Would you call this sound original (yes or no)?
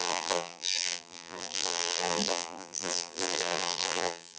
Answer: no